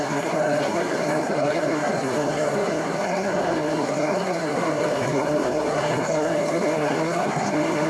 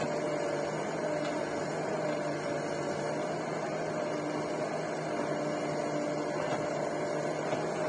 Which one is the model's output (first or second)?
first